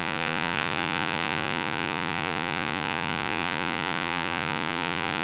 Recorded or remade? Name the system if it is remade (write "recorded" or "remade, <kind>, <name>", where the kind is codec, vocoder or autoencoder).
remade, vocoder, Vocos